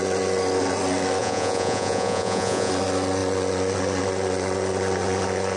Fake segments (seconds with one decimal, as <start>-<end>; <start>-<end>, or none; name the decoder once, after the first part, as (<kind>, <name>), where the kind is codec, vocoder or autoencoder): 1.2-2.7 (vocoder, Vocos)